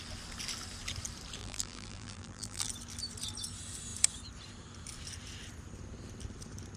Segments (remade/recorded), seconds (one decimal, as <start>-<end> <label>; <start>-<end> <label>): 0.0-1.4 recorded; 1.4-2.7 remade; 2.7-6.8 recorded